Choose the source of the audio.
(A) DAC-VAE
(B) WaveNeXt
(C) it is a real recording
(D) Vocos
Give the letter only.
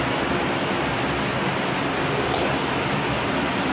C